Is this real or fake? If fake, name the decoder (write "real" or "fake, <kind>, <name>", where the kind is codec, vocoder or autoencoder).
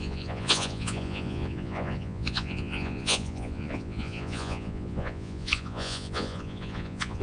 fake, vocoder, Vocos